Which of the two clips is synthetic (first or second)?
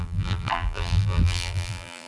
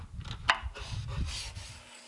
first